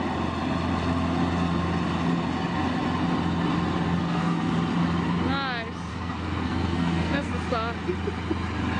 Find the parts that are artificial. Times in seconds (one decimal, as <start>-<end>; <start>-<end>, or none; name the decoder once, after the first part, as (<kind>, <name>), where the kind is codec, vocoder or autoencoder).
4.0-4.5 (codec, SNAC); 5.9-7.3